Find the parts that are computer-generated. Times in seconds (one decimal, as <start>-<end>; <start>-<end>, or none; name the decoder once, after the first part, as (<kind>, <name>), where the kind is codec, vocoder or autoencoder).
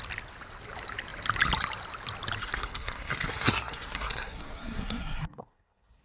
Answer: 2.4-6.0 (codec, SNAC)